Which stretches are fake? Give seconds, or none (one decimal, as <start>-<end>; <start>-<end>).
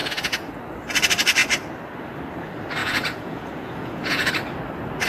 0.0-0.6; 2.8-4.3